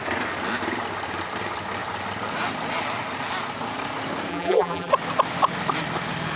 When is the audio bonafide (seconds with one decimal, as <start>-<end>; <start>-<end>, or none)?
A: 0.0-4.3; 4.9-6.4